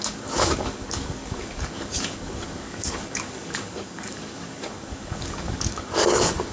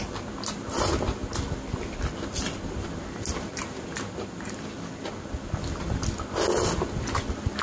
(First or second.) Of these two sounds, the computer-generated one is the first